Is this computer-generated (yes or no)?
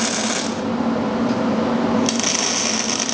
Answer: no